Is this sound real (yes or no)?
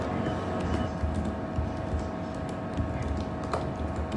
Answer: yes